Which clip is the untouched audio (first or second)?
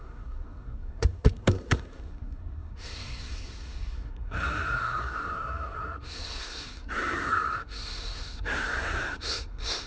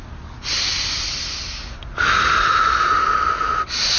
second